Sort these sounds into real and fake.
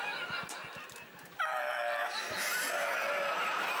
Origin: real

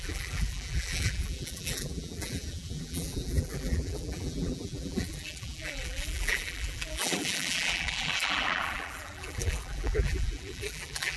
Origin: fake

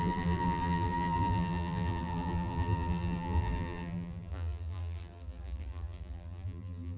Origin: fake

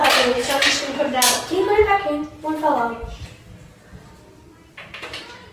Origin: real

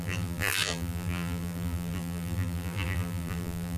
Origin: fake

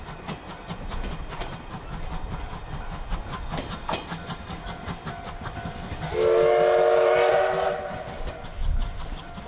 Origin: real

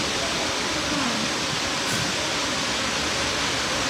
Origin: fake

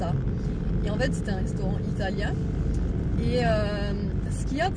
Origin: real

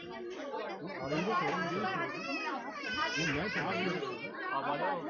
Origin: real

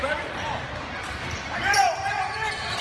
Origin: fake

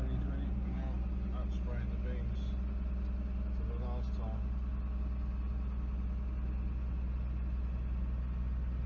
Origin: real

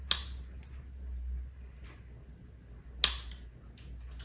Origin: real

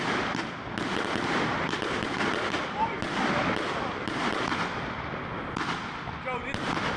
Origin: real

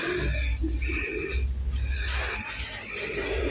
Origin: real